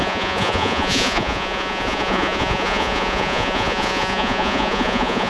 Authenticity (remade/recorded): remade